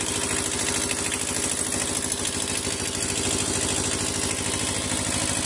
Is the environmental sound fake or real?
real